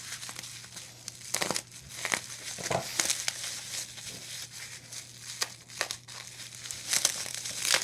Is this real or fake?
real